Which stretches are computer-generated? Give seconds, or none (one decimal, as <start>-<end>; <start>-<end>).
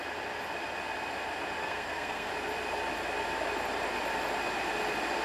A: 1.6-2.3